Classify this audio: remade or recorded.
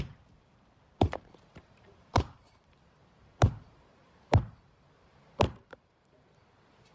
remade